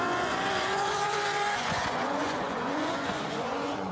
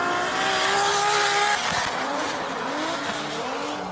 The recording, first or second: second